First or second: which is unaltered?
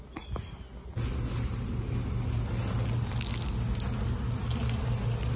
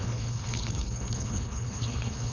first